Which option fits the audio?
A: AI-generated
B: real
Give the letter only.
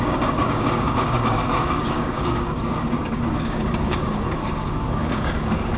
A